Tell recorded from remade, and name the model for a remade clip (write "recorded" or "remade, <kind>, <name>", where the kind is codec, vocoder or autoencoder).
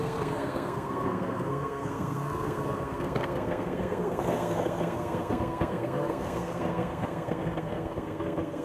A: remade, codec, SNAC